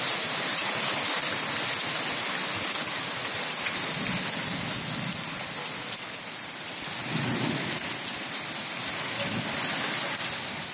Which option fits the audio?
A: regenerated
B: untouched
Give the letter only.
B